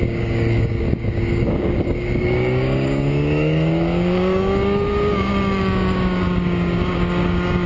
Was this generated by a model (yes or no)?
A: yes